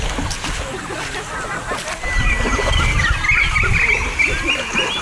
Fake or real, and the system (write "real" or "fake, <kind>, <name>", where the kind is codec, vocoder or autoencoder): real